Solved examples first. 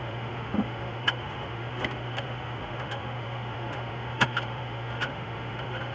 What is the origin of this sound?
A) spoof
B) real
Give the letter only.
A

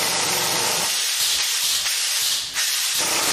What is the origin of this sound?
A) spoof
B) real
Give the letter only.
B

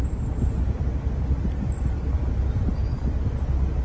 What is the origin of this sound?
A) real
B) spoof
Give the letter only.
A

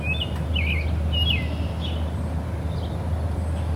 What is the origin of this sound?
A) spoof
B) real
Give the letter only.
B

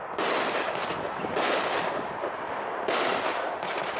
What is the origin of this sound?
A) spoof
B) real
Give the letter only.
B